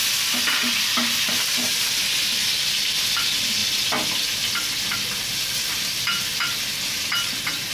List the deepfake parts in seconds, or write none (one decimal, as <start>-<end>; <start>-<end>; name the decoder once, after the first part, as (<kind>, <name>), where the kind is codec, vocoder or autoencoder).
none